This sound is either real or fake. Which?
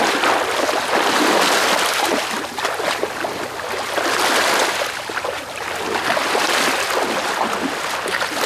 real